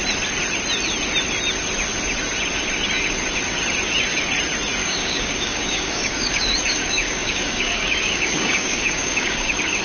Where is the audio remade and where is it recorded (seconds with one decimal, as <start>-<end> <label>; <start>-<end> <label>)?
0.0-4.8 recorded; 4.8-9.8 remade